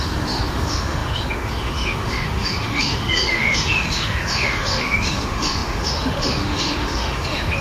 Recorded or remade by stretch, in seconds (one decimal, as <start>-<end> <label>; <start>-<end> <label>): 0.0-7.6 remade